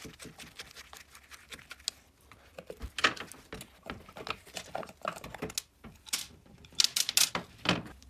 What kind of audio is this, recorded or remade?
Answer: recorded